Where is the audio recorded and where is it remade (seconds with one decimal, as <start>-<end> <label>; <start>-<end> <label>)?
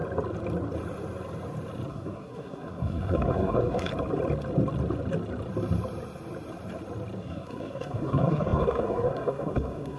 0.0-1.9 recorded; 1.9-3.9 remade; 3.9-7.2 recorded; 7.2-10.0 remade